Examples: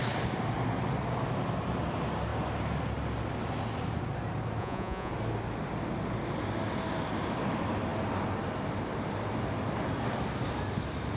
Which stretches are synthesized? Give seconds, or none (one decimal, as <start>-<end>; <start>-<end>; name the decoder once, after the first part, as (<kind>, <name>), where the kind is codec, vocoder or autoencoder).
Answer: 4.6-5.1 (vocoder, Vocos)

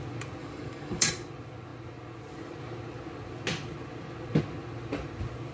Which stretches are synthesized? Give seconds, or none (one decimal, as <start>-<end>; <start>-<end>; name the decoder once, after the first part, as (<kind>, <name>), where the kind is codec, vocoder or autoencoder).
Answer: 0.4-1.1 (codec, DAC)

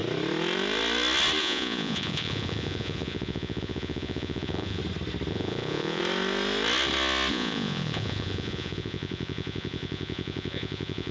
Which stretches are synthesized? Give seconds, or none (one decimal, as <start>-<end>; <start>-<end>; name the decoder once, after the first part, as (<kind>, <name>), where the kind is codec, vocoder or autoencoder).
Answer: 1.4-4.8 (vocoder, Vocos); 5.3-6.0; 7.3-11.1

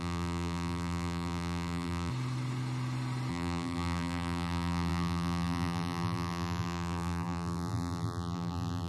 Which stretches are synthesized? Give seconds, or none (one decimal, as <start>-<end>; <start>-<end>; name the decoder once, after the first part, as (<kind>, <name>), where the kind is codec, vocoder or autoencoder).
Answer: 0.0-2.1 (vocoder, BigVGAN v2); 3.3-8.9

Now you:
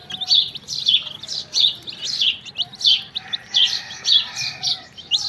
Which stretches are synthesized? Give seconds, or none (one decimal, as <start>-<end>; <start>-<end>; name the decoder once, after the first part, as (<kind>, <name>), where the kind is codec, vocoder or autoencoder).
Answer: none

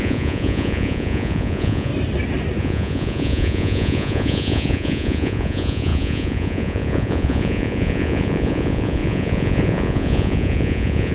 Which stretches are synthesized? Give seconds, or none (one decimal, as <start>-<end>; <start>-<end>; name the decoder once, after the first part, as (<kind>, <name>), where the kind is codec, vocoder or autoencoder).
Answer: 0.0-1.9 (vocoder, Vocos); 2.6-11.1

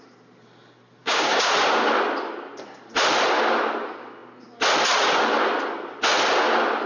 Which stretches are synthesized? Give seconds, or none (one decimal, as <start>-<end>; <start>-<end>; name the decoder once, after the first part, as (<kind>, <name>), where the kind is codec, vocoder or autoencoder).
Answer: 1.0-1.5 (codec, DAC)